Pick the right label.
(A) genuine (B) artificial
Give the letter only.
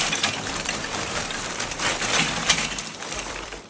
B